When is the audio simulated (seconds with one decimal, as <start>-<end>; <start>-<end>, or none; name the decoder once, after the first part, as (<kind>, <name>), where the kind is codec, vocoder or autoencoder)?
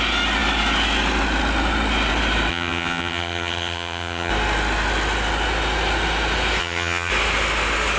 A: 2.5-4.3 (vocoder, HiFi-GAN); 6.6-7.1